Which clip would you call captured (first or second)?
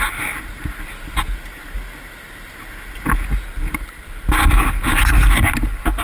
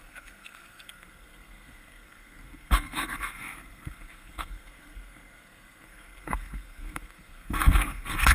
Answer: first